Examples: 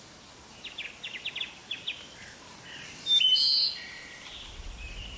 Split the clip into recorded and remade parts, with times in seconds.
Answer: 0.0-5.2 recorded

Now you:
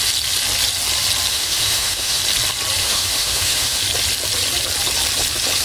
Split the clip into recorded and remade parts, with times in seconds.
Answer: 0.0-1.3 recorded; 1.3-2.2 remade; 2.2-2.8 recorded; 2.8-3.8 remade; 3.8-5.6 recorded

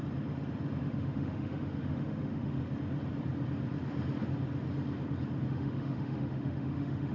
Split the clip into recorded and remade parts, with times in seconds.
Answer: 0.0-0.8 recorded; 0.8-2.6 remade; 2.6-5.5 recorded; 5.5-7.1 remade

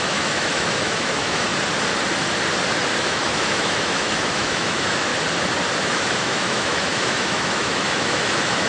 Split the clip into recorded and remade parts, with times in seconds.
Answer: 0.0-1.5 remade; 1.5-3.0 recorded; 3.0-5.1 remade; 5.1-5.8 recorded; 5.8-8.7 remade